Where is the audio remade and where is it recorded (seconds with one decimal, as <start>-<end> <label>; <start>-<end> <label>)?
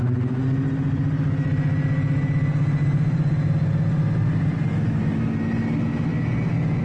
0.0-2.8 recorded; 2.8-3.5 remade; 3.5-6.8 recorded